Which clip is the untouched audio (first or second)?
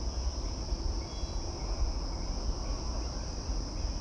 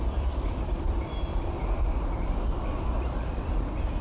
first